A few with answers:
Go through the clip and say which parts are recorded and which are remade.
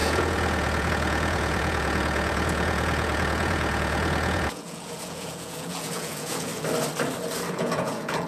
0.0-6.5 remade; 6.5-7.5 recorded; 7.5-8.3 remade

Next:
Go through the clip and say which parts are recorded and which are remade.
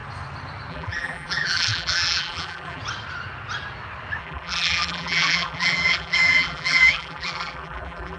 0.0-0.7 recorded; 0.7-2.8 remade; 2.8-4.2 recorded; 4.2-8.2 remade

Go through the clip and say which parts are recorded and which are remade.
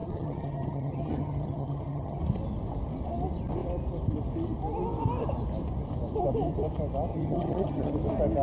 0.0-2.2 remade; 2.2-7.1 recorded; 7.1-7.9 remade; 7.9-8.4 recorded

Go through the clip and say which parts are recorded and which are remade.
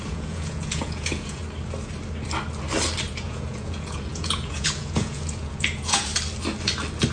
0.0-1.4 remade; 1.4-3.1 recorded; 3.1-6.1 remade; 6.1-7.1 recorded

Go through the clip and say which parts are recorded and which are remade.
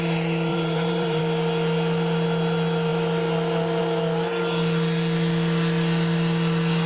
0.0-0.5 recorded; 0.5-1.2 remade; 1.2-6.9 recorded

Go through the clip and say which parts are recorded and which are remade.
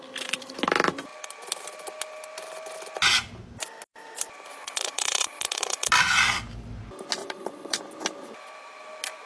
0.0-4.5 recorded; 4.5-5.9 remade; 5.9-7.2 recorded; 7.2-7.8 remade; 7.8-9.3 recorded